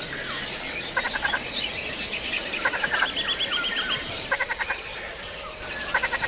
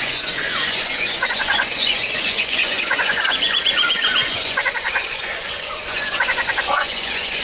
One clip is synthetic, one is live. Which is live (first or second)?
first